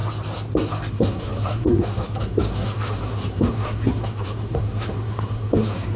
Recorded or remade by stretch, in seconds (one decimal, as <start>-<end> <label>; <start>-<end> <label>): 0.0-0.9 recorded; 0.9-6.0 remade